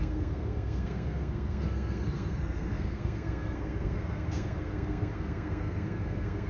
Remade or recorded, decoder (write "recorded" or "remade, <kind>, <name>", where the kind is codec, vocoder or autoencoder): remade, codec, SNAC